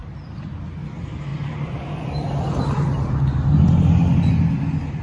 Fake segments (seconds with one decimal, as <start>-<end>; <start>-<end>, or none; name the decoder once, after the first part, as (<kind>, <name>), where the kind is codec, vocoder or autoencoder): 1.3-4.3 (vocoder, BigVGAN v2)